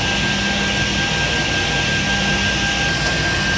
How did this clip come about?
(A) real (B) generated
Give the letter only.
A